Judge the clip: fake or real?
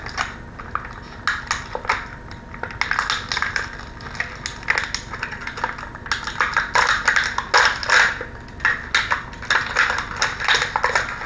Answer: real